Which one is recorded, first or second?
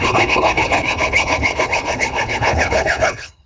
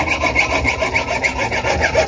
second